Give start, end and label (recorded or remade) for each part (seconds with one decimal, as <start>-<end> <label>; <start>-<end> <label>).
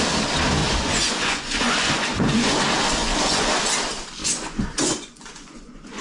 0.0-0.6 recorded; 0.6-2.6 remade; 2.6-3.0 recorded; 3.0-3.6 remade; 3.6-4.2 recorded; 4.2-6.0 remade